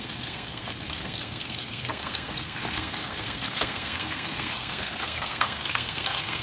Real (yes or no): no